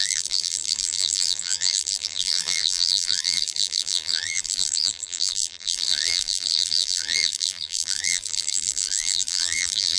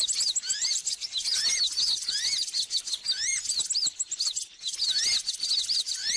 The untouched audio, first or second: second